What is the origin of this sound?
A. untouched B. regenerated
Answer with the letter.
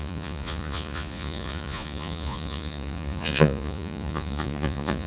B